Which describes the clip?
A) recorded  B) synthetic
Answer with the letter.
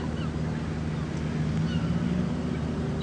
A